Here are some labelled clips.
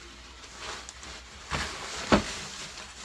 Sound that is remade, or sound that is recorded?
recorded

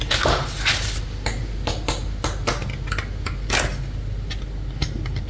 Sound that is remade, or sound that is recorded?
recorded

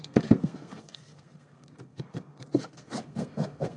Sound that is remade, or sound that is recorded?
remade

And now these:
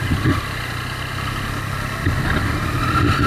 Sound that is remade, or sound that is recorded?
recorded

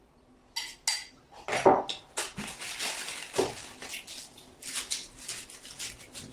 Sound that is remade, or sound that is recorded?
recorded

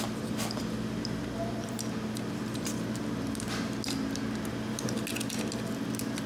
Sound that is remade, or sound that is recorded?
recorded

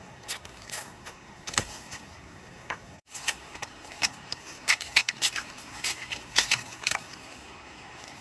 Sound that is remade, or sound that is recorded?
remade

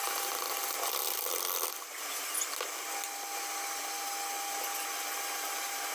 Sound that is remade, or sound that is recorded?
recorded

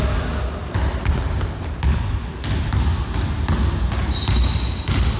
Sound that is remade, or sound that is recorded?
recorded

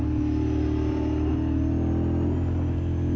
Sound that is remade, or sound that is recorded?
recorded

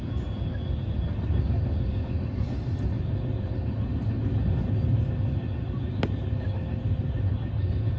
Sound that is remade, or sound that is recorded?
recorded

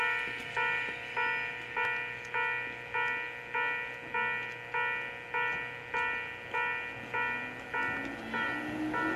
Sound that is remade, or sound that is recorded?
recorded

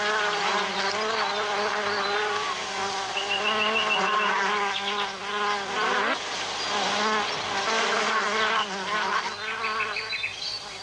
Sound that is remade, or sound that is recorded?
recorded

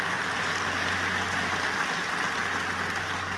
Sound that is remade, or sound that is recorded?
recorded